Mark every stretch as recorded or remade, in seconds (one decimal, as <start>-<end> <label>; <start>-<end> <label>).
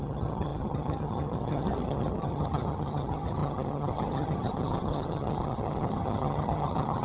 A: 0.0-7.0 remade